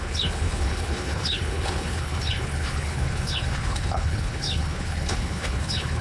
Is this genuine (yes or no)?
no